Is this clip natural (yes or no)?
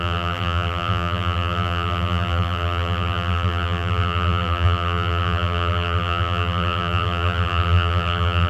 no